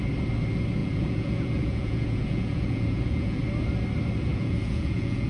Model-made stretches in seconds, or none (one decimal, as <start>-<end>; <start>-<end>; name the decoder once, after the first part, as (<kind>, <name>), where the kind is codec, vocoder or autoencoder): 0.8-3.4 (vocoder, Vocos); 4.3-5.3